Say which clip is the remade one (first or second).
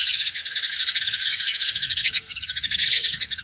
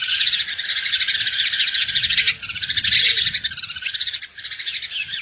first